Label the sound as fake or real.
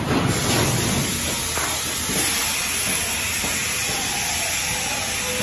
real